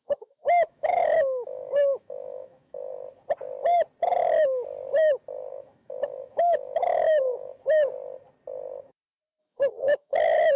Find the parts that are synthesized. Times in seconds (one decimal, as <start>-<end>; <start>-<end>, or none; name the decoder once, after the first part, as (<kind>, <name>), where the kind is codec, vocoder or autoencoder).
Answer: 0.0-2.9 (autoencoder, DAC-VAE); 5.5-7.5; 8.8-10.6